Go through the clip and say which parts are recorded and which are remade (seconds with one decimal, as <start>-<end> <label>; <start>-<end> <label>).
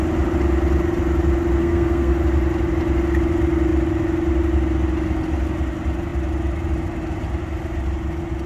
0.0-1.6 recorded; 1.6-2.1 remade; 2.1-8.5 recorded